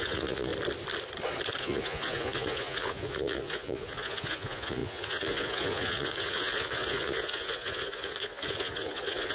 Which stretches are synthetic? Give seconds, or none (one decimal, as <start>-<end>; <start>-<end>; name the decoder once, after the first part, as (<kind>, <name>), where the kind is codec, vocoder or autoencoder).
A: 0.0-0.5 (vocoder, Vocos); 1.6-9.3